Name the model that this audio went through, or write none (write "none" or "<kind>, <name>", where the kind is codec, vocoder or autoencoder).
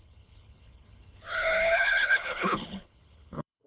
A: codec, HILCodec